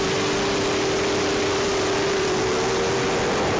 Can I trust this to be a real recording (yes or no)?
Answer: yes